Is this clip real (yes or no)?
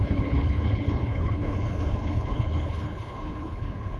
no